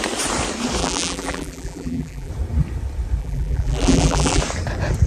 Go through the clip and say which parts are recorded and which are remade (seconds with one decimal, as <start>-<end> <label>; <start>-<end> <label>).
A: 0.0-0.8 recorded; 0.8-2.3 remade; 2.3-3.2 recorded; 3.2-4.4 remade; 4.4-5.1 recorded